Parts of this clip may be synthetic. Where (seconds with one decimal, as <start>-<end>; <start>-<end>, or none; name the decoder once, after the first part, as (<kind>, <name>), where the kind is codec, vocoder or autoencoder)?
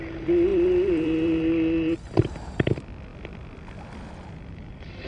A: 0.5-2.5 (vocoder, BigVGAN v2); 3.1-4.3